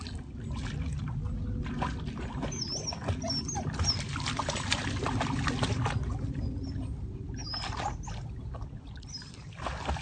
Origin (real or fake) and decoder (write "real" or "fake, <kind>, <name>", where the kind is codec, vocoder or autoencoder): real